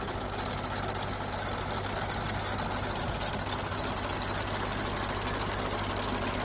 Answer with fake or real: real